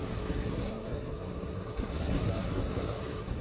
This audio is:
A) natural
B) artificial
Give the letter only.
B